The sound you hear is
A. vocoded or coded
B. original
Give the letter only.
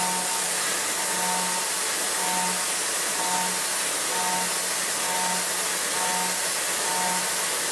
B